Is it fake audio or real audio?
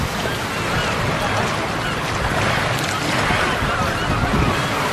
real